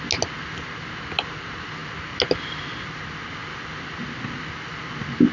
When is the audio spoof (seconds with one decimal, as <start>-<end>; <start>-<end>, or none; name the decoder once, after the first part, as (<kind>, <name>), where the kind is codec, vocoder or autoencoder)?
none